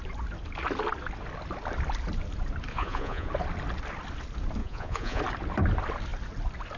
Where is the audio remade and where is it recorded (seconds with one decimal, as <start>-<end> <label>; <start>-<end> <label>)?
0.0-2.7 recorded; 2.7-3.3 remade; 3.3-4.6 recorded; 4.6-5.2 remade; 5.2-6.8 recorded